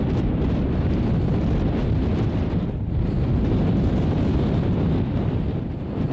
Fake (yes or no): no